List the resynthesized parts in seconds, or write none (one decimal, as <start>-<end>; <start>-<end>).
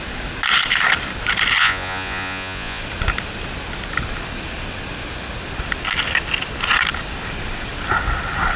1.6-2.8